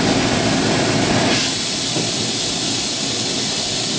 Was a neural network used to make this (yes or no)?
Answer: no